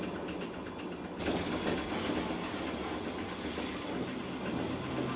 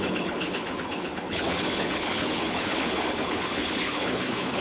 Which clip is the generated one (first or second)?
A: second